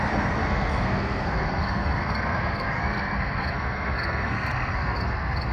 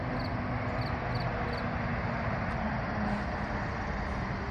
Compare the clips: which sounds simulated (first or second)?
first